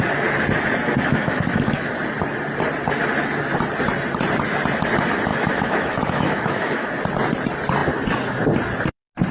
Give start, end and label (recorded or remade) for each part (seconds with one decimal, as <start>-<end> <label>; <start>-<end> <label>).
0.0-1.1 recorded; 1.1-1.9 remade; 1.9-5.3 recorded; 5.3-6.9 remade; 6.9-9.3 recorded